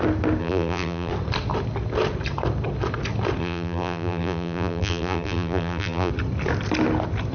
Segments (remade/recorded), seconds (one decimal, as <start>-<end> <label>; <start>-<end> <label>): 0.0-0.4 recorded; 0.4-1.1 remade; 1.1-3.4 recorded; 3.4-6.1 remade; 6.1-7.3 recorded

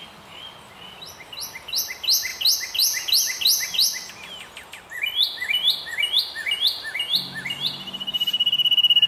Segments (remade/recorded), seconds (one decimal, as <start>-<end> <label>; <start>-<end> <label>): 0.0-9.1 recorded

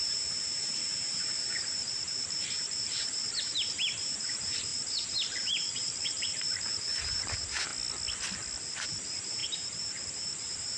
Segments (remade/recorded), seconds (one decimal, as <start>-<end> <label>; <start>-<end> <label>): 0.0-7.7 remade; 7.7-8.6 recorded; 8.6-10.8 remade

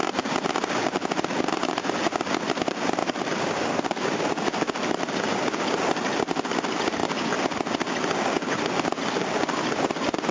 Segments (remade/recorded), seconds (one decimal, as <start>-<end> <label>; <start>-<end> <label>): 0.0-3.0 recorded; 3.0-5.6 remade; 5.6-10.3 recorded

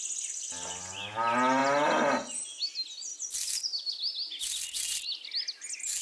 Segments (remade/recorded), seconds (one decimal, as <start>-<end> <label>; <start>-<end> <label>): 0.0-6.0 recorded

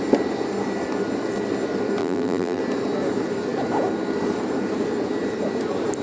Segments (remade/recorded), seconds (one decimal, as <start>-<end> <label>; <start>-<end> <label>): 0.0-2.0 recorded; 2.0-2.6 remade; 2.6-6.0 recorded

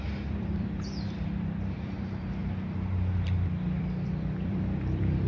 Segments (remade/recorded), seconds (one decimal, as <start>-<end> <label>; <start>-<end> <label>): 0.0-2.4 remade; 2.4-3.8 recorded; 3.8-5.3 remade